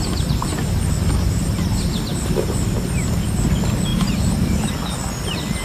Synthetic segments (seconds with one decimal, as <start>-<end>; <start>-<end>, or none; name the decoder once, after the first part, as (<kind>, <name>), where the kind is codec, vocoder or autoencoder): 3.9-4.7 (vocoder, BigVGAN v2)

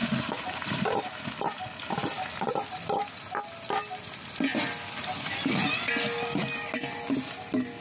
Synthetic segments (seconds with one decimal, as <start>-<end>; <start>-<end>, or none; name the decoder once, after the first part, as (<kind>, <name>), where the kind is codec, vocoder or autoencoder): none

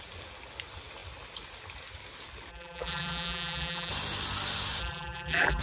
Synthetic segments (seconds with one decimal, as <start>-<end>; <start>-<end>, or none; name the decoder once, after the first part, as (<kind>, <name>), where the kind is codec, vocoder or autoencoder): 2.5-3.9 (vocoder, BigVGAN v2); 4.8-5.6

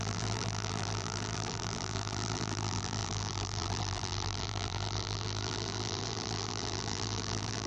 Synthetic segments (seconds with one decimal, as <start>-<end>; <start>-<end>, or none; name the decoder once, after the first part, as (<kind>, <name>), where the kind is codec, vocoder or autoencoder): 0.0-7.7 (vocoder, BigVGAN v2)

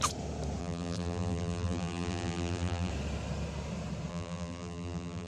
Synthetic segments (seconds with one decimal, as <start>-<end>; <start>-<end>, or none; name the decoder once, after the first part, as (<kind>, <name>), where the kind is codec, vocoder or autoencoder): 0.6-2.9 (vocoder, BigVGAN v2); 4.1-5.3

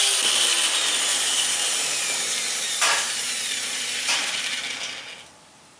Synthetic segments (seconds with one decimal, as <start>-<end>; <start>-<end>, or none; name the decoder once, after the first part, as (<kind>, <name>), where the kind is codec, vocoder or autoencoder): 1.1-4.6 (vocoder, BigVGAN v2)

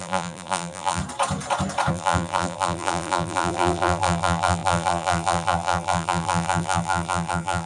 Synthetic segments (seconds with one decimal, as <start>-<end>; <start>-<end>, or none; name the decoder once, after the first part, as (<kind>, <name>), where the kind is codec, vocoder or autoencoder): 0.0-1.0 (vocoder, BigVGAN v2); 1.9-7.7